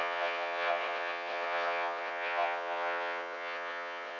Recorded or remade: remade